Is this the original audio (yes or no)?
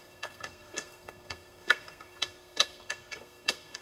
no